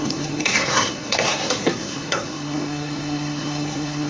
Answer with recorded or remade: remade